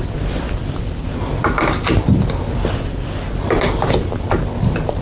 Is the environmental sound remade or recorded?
recorded